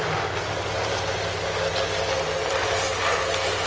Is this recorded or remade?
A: recorded